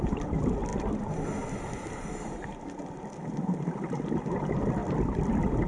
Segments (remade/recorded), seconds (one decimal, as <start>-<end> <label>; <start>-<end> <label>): 0.0-0.7 remade; 0.7-2.1 recorded; 2.1-5.7 remade